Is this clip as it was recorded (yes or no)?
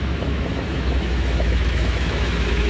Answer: no